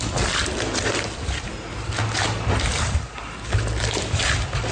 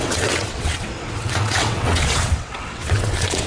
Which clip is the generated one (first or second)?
second